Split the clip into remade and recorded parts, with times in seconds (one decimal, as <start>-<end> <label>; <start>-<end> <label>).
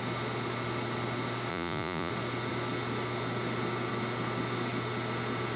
0.0-1.5 recorded; 1.5-2.1 remade; 2.1-5.6 recorded